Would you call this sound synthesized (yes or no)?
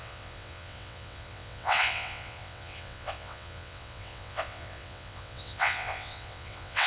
yes